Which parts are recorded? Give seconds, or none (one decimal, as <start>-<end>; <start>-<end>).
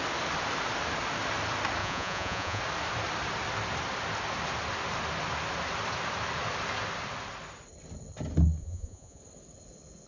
0.0-1.8; 2.6-8.6; 9.2-10.1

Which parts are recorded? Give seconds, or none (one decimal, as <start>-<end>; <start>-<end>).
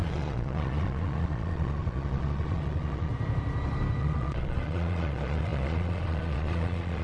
3.1-4.0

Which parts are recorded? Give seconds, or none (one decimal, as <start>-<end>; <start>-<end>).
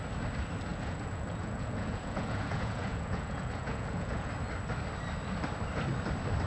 0.0-0.7; 4.3-6.5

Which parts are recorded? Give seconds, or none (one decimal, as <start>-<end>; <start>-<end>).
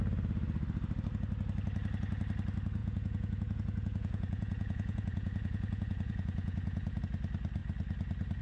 0.0-2.8; 7.0-8.4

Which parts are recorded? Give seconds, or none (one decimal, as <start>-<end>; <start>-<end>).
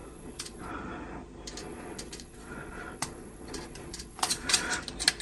0.7-1.6; 4.7-5.2